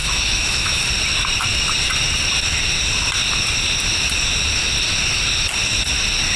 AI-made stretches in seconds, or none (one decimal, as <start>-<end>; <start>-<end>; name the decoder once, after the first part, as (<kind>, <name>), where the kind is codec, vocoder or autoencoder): 0.0-0.8 (autoencoder, DAC-VAE)

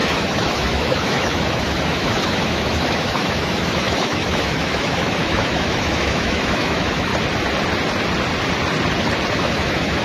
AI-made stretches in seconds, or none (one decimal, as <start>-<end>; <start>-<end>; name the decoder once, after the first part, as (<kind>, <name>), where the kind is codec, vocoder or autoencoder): 0.0-7.1 (autoencoder, DAC-VAE); 9.3-10.0

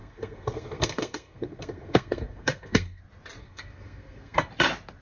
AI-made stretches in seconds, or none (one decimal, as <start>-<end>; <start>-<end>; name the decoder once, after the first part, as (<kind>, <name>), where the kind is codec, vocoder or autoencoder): 0.0-3.0 (codec, SNAC); 3.4-4.5

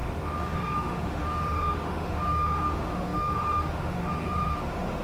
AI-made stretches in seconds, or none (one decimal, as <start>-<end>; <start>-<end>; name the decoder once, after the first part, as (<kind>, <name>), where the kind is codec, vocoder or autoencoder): 0.0-5.0 (autoencoder, DAC-VAE)

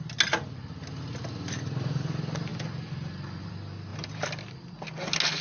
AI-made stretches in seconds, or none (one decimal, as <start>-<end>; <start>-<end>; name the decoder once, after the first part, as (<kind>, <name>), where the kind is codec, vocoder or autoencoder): none

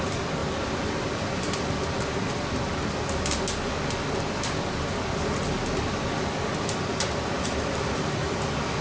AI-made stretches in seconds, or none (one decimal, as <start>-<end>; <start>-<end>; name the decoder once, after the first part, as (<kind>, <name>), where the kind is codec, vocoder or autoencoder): none

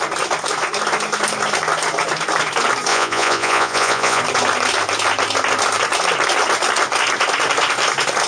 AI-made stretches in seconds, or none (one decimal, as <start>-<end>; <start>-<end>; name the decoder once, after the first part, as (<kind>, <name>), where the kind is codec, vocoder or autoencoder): 2.9-4.2 (vocoder, Vocos)

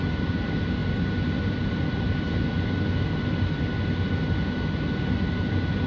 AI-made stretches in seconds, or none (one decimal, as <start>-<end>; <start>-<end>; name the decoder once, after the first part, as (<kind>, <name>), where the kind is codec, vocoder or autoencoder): none